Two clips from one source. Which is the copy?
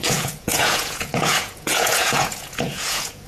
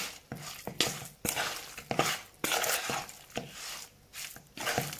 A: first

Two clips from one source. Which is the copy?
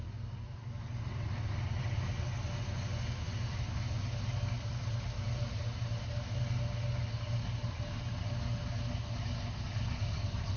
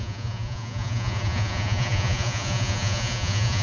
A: second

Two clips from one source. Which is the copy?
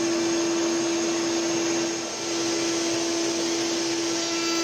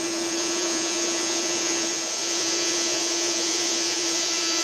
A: second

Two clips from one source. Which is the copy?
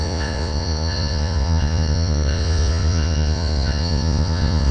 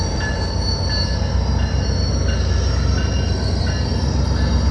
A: first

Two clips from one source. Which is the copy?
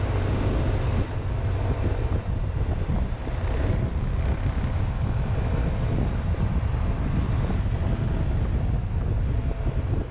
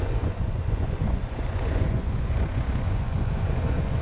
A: second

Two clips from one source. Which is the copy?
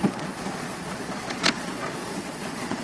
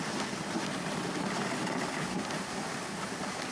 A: first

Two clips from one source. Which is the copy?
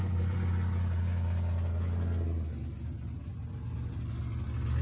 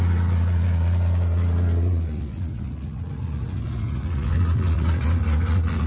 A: second